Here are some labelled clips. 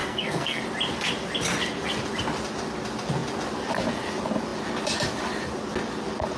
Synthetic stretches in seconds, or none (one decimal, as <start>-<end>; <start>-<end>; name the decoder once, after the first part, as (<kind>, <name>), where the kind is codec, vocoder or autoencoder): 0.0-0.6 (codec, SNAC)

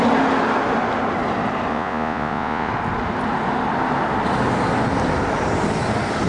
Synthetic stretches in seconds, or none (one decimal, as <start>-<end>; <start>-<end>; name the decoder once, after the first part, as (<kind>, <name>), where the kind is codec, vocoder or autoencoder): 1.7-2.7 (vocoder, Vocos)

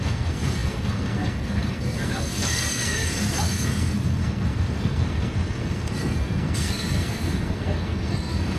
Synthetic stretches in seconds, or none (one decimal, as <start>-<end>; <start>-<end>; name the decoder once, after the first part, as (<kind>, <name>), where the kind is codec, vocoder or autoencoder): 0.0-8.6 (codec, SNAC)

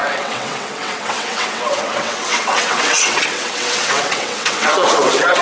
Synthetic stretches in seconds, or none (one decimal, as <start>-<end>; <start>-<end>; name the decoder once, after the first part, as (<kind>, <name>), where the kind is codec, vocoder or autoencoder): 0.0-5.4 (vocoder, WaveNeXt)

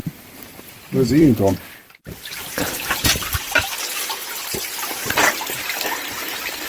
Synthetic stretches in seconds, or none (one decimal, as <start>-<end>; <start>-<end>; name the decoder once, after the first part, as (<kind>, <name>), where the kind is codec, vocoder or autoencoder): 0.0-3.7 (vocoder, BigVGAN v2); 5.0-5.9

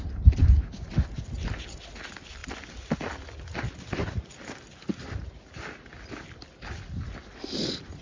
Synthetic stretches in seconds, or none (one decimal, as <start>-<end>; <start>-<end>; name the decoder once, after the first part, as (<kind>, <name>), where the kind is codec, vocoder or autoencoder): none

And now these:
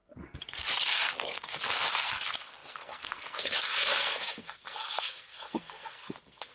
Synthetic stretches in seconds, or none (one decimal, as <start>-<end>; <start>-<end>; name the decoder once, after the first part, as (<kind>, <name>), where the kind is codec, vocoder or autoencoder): 0.0-6.5 (codec, SNAC)

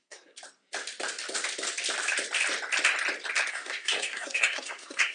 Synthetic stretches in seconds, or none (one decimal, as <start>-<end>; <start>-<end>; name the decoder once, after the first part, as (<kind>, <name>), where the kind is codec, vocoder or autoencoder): 0.0-0.4 (codec, SNAC); 3.5-5.1